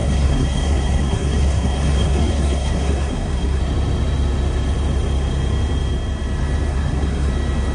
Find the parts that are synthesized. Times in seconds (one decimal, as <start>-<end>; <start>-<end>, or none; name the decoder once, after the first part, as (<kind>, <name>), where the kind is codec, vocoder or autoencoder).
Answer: 0.0-3.6 (codec, SNAC); 6.7-7.3